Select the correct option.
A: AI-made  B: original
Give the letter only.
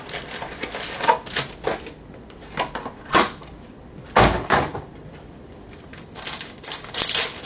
A